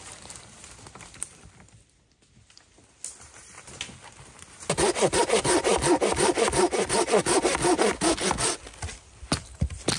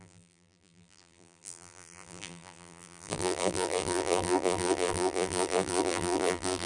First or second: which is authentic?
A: first